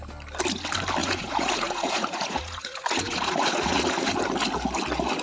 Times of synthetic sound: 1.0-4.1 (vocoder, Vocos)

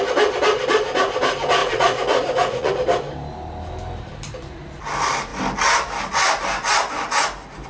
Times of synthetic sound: 1.6-2.7 (vocoder, Vocos)

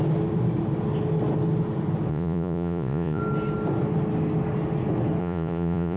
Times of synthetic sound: 2.1-3.2 (vocoder, Vocos); 5.2-6.0

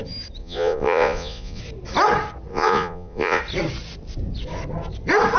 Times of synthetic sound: 0.4-1.6 (vocoder, Vocos); 2.5-3.4

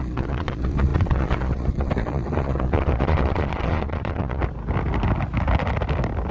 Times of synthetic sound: 0.0-4.4 (vocoder, Vocos)

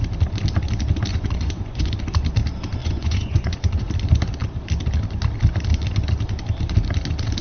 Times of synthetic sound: 1.1-1.9 (vocoder, Vocos); 2.8-3.8

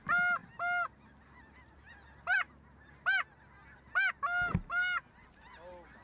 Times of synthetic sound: none